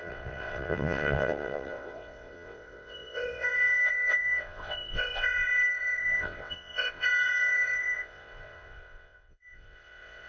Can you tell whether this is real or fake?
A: fake